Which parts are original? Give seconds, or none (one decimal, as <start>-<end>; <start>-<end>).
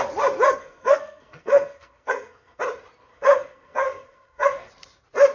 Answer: 0.0-0.6; 2.6-3.1; 4.7-5.3